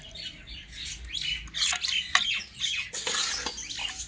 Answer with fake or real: real